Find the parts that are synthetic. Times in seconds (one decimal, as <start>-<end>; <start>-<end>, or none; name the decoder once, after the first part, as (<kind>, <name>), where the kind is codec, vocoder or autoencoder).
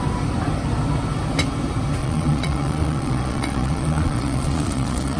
2.0-5.2 (vocoder, Vocos)